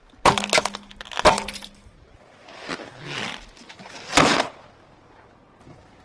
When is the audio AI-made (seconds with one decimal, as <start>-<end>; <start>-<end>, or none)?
none